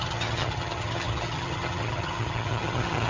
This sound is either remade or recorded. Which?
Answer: remade